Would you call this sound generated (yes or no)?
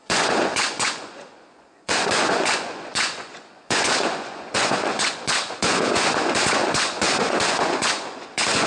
yes